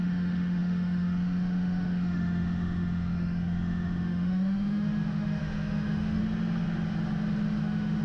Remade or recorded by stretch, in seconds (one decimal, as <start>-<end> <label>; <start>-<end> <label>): 0.0-6.2 remade; 6.2-7.6 recorded; 7.6-8.0 remade